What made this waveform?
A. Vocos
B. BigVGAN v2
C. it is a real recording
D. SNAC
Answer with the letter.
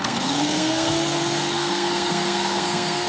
D